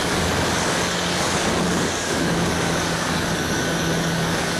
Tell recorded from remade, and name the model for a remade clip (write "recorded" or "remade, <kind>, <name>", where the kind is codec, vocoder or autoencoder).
remade, codec, DAC